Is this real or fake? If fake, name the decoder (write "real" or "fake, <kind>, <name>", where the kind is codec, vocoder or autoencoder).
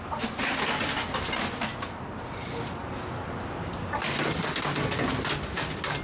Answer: real